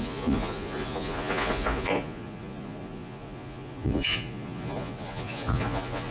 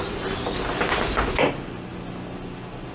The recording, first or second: second